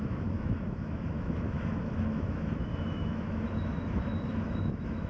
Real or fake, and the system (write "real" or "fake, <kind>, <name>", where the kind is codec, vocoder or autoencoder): fake, autoencoder, DAC-VAE